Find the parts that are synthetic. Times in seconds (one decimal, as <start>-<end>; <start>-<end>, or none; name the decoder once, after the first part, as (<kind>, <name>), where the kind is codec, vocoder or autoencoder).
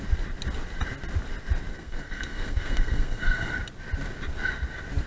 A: 1.7-3.6 (codec, SNAC)